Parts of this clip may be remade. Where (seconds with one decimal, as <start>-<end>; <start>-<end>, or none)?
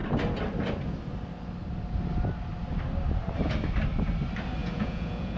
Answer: 4.6-5.4